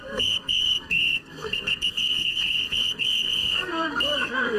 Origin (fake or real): fake